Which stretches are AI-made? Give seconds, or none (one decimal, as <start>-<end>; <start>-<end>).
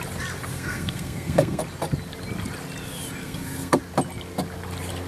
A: 0.5-1.6; 3.2-3.8